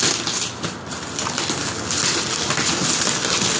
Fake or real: real